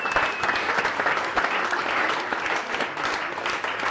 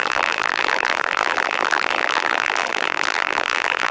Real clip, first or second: first